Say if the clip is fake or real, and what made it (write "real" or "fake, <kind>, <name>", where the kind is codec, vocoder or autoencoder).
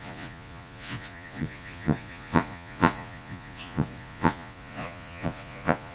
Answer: fake, vocoder, Vocos